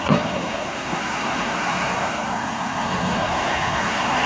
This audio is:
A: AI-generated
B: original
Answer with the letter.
A